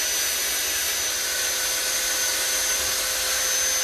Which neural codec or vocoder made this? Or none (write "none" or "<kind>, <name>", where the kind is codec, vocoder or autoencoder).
none